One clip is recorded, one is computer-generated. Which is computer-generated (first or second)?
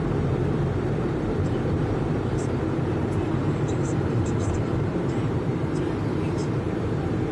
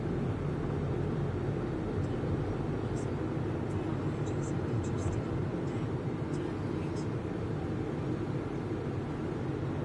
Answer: first